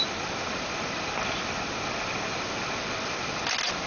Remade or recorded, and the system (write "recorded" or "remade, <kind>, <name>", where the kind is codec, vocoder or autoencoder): recorded